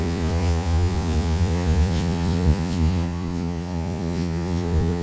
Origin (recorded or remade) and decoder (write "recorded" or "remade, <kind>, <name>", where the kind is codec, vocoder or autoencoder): remade, vocoder, Vocos